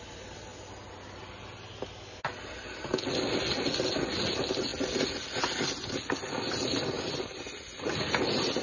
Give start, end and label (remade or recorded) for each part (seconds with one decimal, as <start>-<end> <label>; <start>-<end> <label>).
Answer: 0.0-8.6 recorded